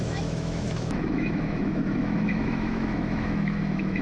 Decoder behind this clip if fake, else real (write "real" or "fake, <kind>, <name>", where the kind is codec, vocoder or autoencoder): fake, autoencoder, DAC-VAE